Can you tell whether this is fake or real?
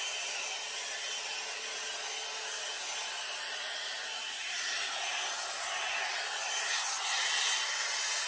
real